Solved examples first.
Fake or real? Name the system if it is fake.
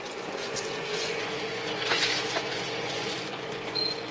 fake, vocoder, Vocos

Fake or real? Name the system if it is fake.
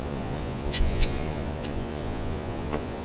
fake, vocoder, Vocos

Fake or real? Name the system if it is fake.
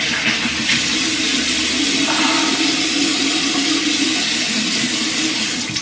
real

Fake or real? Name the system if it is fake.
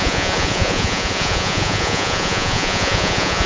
fake, vocoder, Vocos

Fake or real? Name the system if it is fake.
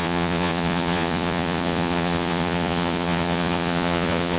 fake, vocoder, Vocos